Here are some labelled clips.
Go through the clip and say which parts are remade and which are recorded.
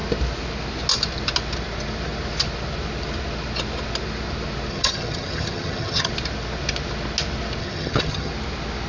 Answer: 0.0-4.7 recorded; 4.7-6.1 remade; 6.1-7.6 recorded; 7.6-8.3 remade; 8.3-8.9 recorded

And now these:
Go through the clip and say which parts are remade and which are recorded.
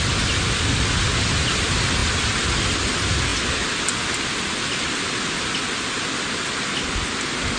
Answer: 0.0-7.6 recorded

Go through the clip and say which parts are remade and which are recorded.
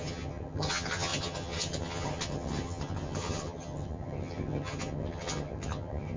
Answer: 0.0-6.2 remade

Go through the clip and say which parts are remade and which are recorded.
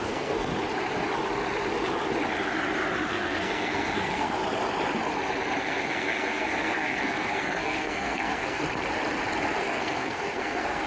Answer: 0.0-0.5 remade; 0.5-3.1 recorded; 3.1-4.4 remade; 4.4-5.6 recorded; 5.6-8.6 remade; 8.6-9.6 recorded; 9.6-10.9 remade